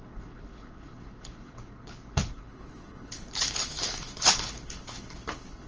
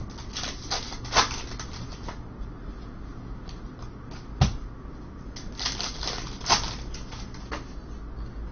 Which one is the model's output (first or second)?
first